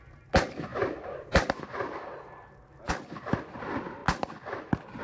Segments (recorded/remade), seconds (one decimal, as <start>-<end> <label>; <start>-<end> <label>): 0.0-5.0 recorded

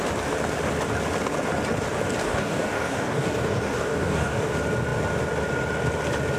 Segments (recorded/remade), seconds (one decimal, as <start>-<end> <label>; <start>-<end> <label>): 0.0-2.2 recorded; 2.2-4.5 remade; 4.5-6.4 recorded

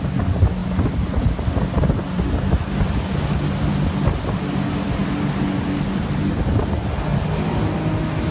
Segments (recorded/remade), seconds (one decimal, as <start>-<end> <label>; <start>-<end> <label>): 0.0-8.3 recorded

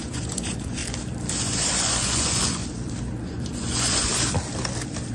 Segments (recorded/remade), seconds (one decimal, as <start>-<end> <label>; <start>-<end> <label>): 0.0-0.8 remade; 0.8-1.4 recorded; 1.4-2.6 remade; 2.6-3.2 recorded; 3.2-4.1 remade; 4.1-5.1 recorded

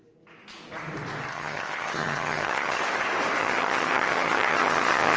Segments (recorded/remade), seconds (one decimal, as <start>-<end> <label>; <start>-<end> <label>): 0.0-1.3 recorded; 1.3-2.8 remade; 2.8-3.4 recorded; 3.4-5.2 remade

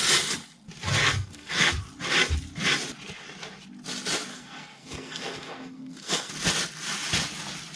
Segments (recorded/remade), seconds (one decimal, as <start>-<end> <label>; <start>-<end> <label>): 0.0-1.0 recorded; 1.0-1.7 remade; 1.7-4.3 recorded; 4.3-6.3 remade; 6.3-7.8 recorded

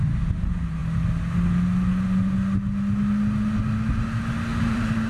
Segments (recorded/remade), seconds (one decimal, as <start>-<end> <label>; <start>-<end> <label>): 0.0-4.5 recorded; 4.5-5.1 remade

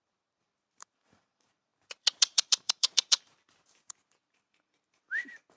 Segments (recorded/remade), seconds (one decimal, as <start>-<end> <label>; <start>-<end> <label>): 0.0-5.6 remade